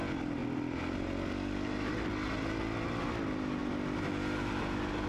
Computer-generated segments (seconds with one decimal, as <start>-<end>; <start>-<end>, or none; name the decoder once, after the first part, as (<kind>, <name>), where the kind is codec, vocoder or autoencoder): none